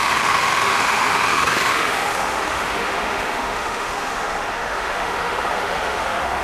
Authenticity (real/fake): fake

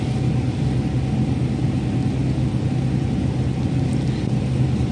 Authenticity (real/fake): real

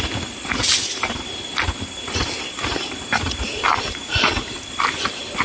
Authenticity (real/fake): real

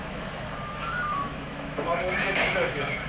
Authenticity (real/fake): fake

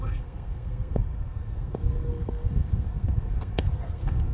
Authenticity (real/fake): fake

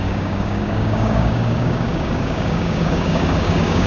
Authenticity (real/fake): fake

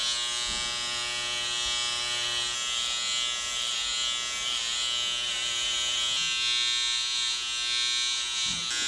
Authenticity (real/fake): real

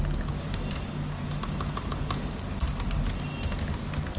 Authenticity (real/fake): real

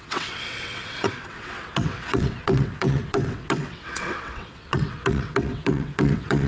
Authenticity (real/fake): fake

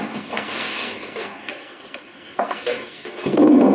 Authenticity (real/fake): fake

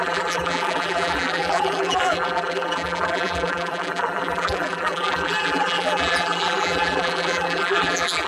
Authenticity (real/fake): fake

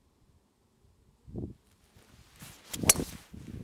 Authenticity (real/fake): real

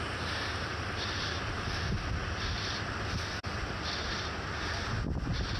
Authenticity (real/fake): real